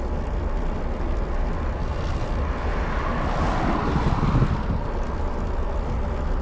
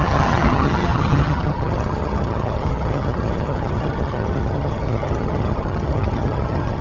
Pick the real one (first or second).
first